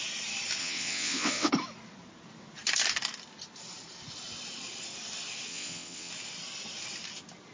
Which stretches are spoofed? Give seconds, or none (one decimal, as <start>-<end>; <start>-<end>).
0.6-1.5; 5.5-6.1